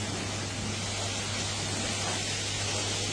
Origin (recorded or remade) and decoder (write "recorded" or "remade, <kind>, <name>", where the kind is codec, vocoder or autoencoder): recorded